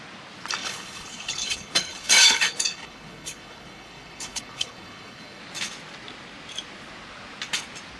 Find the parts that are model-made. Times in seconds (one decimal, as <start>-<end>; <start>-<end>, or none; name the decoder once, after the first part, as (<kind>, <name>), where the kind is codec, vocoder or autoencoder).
0.6-5.4 (codec, HILCodec)